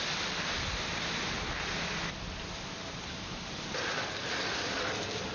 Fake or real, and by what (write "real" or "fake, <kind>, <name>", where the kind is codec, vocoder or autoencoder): real